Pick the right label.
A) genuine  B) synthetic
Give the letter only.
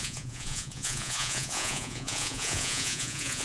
B